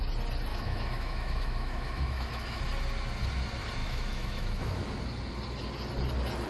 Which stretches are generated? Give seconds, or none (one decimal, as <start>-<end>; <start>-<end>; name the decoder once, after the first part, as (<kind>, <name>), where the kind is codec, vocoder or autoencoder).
0.5-2.6 (autoencoder, DAC-VAE); 3.8-4.8